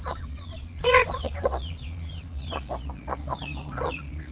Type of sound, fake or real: fake